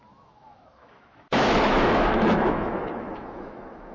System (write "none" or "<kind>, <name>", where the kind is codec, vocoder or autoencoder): autoencoder, DAC-VAE